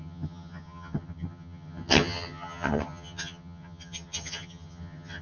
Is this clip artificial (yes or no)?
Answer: yes